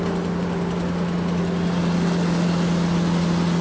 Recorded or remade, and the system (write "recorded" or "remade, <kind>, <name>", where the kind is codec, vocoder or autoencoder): recorded